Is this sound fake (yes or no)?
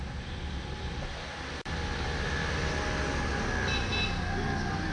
no